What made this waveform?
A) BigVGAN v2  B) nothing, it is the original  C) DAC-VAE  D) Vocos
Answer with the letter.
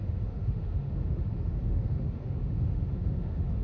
C